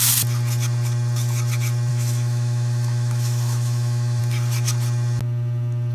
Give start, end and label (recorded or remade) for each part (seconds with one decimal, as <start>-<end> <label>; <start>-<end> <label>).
0.0-1.9 recorded; 1.9-4.2 remade; 4.2-5.9 recorded

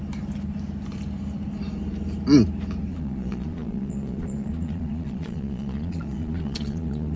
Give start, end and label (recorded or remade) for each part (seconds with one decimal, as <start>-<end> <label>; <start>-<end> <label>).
0.0-2.9 recorded; 2.9-7.2 remade

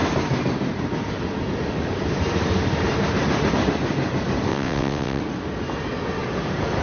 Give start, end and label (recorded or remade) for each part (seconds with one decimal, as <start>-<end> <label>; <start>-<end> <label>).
0.0-4.5 recorded; 4.5-5.2 remade; 5.2-6.8 recorded

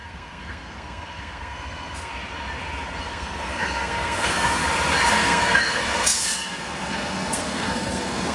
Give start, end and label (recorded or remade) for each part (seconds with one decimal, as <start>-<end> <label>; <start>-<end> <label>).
0.0-2.1 remade; 2.1-3.0 recorded; 3.0-4.6 remade; 4.6-5.1 recorded; 5.1-8.3 remade

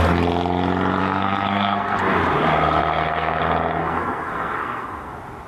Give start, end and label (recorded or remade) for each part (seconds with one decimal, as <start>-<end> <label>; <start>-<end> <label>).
0.0-1.0 recorded; 1.0-2.2 remade; 2.2-2.8 recorded; 2.8-3.4 remade; 3.4-3.8 recorded; 3.8-5.1 remade; 5.1-5.5 recorded